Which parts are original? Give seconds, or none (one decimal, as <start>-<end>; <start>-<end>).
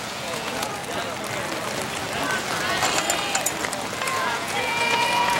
0.8-4.0